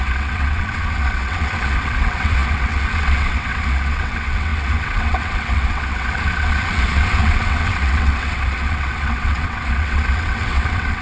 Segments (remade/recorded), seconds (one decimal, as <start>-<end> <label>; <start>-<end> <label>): 0.0-11.0 remade